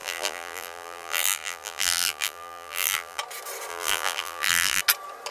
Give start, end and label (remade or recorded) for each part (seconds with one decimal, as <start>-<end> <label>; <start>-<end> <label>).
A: 0.0-3.2 remade; 3.2-3.7 recorded; 3.7-4.8 remade; 4.8-5.3 recorded